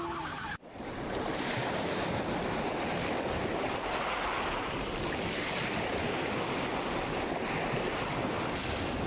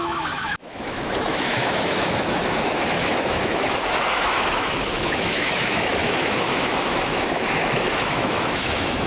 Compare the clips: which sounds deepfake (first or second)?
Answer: second